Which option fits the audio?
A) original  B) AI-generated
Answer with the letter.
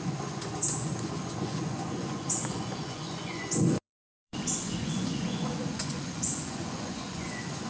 B